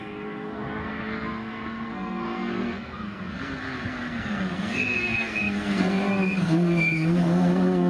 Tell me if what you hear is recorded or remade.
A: remade